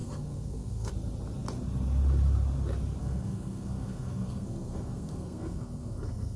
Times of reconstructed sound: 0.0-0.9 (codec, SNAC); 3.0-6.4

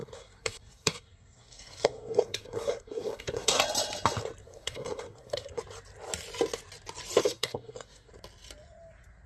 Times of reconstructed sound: 0.0-3.6 (codec, SNAC); 4.4-5.6; 7.2-8.1

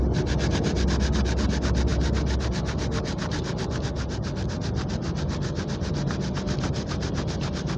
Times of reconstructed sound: none

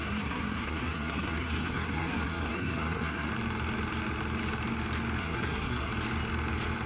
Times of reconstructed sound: 0.0-3.3 (codec, SNAC); 5.2-5.9

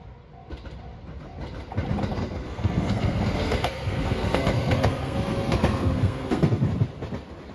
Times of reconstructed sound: 2.1-6.6 (codec, SNAC)

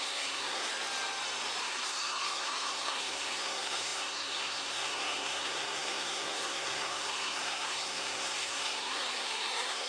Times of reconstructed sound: 0.0-0.7 (codec, SNAC); 1.6-9.9